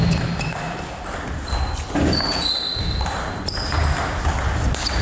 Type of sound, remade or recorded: recorded